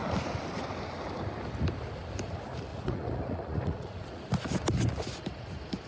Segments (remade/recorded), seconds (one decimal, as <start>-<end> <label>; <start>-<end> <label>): 0.0-2.7 recorded; 2.7-4.2 remade; 4.2-5.9 recorded